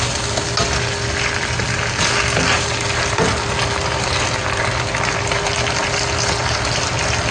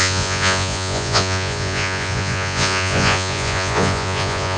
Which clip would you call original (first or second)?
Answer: first